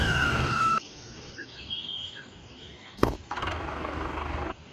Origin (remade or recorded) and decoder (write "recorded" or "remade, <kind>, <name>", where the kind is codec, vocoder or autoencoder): remade, codec, DAC